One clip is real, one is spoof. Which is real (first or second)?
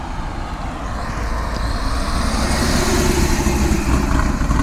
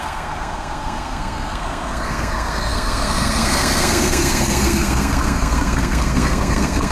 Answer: first